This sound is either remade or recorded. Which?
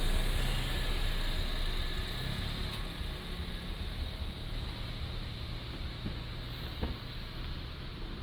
recorded